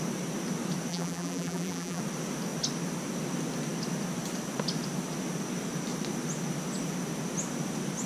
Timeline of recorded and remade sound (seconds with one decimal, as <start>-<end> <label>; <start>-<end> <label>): 0.0-0.9 recorded; 0.9-2.0 remade; 2.0-8.1 recorded

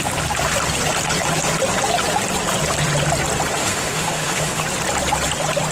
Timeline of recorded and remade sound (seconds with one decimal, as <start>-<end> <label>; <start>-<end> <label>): 0.0-3.6 recorded; 3.6-4.6 remade; 4.6-5.7 recorded

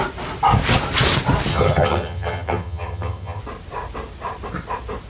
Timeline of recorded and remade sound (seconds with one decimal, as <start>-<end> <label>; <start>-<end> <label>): 0.0-1.5 recorded; 1.5-3.4 remade; 3.4-5.1 recorded

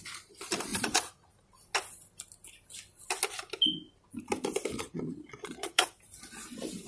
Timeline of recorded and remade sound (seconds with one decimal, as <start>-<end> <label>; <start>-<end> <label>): 0.0-0.7 recorded; 0.7-1.3 remade; 1.3-4.7 recorded; 4.7-5.9 remade; 5.9-6.9 recorded

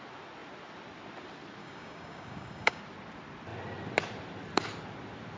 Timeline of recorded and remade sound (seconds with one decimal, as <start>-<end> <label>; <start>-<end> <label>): 0.0-1.6 recorded; 1.6-2.8 remade; 2.8-5.4 recorded

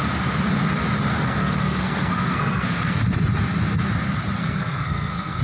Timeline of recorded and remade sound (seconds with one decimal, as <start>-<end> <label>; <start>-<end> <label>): 0.0-1.1 recorded; 1.1-3.0 remade; 3.0-4.4 recorded; 4.4-5.4 remade

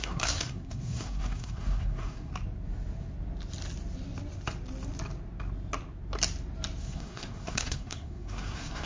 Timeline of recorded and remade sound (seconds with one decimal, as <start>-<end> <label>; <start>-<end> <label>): 0.0-2.3 remade; 2.3-6.8 recorded; 6.8-8.9 remade